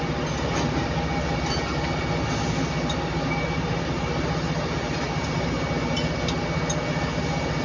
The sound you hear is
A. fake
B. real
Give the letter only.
B